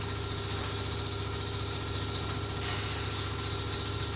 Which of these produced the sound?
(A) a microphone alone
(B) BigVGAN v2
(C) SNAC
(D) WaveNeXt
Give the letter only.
A